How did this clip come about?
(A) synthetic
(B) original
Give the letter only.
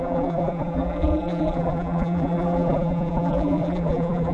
A